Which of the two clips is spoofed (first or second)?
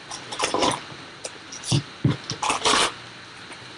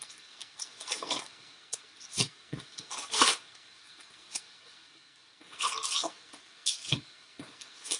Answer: second